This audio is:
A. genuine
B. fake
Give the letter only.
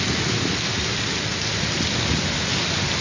A